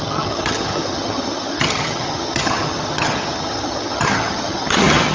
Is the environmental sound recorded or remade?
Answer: remade